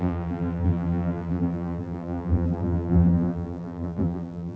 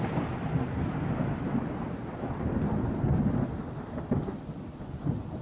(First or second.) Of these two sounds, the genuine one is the second